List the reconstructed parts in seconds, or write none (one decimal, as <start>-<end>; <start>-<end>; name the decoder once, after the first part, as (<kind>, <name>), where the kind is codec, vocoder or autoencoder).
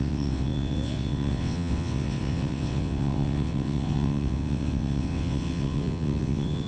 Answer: 0.0-6.7 (vocoder, WaveNeXt)